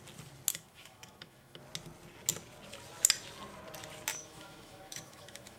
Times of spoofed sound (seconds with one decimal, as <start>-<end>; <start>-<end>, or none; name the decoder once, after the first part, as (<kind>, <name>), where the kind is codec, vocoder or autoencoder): 0.5-1.6 (autoencoder, DAC-VAE); 4.1-5.6